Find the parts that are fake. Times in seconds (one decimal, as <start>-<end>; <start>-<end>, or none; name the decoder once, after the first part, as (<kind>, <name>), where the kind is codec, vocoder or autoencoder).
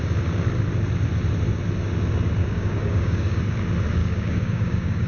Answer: 2.4-3.4 (codec, DAC); 4.0-5.1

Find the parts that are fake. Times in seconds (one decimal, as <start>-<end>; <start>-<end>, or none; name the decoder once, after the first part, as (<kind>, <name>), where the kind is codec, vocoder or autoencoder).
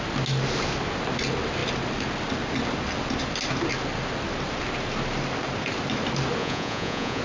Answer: 6.4-7.2 (vocoder, Vocos)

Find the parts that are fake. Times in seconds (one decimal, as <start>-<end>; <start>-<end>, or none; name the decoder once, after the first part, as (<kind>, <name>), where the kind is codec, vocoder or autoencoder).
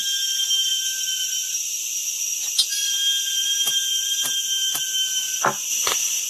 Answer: 0.7-1.5 (vocoder, BigVGAN v2); 2.0-2.5; 3.9-4.8; 5.2-6.3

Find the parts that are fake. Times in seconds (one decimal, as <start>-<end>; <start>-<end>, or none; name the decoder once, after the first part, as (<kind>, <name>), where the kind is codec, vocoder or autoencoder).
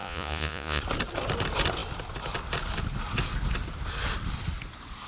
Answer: 0.0-0.8 (vocoder, Vocos)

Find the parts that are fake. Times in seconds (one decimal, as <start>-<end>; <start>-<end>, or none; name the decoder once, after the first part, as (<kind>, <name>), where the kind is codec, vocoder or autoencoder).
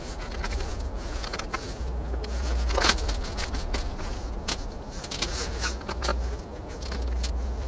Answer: none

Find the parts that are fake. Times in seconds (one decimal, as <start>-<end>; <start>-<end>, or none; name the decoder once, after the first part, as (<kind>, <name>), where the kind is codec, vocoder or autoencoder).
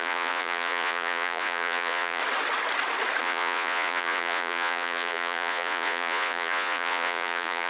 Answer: 0.0-2.2 (vocoder, Vocos); 3.2-7.7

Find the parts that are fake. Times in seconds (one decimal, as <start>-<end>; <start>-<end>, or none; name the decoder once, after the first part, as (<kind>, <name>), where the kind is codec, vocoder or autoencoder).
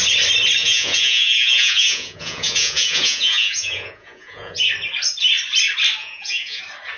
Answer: 0.6-4.6 (vocoder, Vocos); 6.0-6.6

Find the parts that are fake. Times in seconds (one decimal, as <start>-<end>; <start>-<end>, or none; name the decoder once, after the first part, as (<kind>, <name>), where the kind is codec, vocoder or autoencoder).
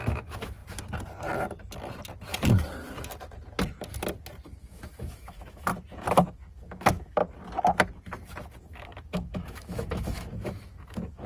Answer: 0.0-0.6 (autoencoder, DAC-VAE); 4.6-5.7; 6.3-7.2; 8.6-11.3